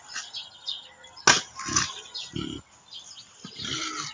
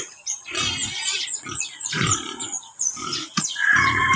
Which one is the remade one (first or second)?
second